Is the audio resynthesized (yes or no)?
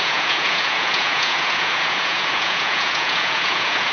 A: yes